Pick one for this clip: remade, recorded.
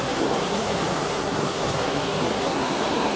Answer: remade